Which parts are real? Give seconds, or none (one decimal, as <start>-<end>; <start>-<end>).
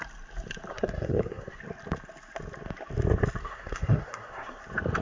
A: 0.0-0.7; 1.6-3.4; 4.6-5.0